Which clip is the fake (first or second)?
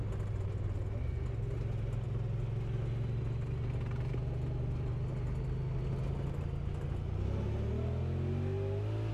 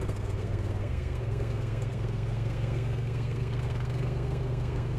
second